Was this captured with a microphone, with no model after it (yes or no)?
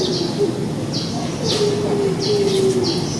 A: yes